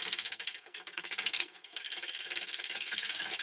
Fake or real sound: fake